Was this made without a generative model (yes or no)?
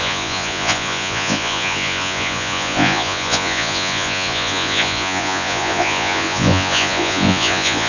no